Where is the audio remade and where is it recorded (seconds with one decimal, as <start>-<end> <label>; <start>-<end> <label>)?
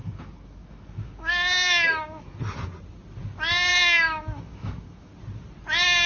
0.0-2.2 remade; 2.2-3.7 recorded; 3.7-5.1 remade; 5.1-6.1 recorded